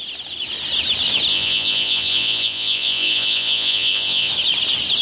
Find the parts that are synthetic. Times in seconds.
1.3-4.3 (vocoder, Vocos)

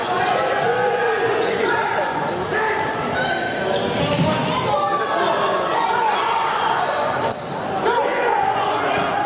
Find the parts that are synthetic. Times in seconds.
0.0-2.3 (vocoder, Vocos); 5.5-7.1; 8.1-9.3

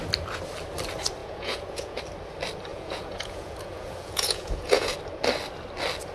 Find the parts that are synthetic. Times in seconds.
1.2-2.0 (vocoder, Vocos); 2.7-4.9

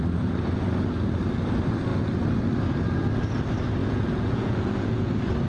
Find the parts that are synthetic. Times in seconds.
3.8-5.1 (vocoder, Vocos)

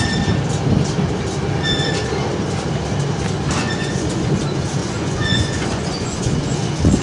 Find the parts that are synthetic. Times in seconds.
3.6-4.3 (vocoder, Vocos); 4.8-7.0

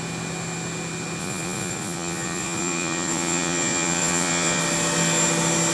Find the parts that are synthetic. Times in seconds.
1.2-4.6 (vocoder, Vocos)

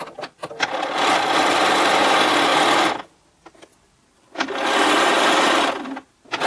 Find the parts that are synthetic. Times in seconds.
none